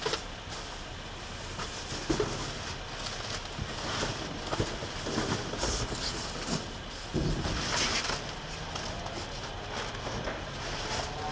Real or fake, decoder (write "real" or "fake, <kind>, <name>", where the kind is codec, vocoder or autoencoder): real